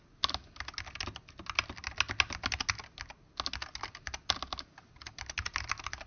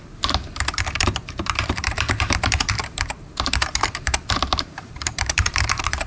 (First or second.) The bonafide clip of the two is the first